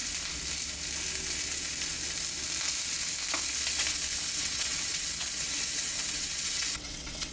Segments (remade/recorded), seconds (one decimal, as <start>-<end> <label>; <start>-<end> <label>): 0.0-4.4 recorded; 4.4-7.3 remade